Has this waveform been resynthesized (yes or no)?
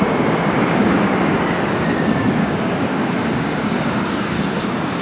yes